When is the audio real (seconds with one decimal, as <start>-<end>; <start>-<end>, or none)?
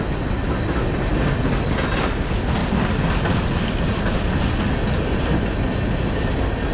0.0-6.7